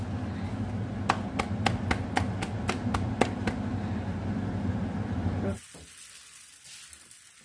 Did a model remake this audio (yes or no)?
no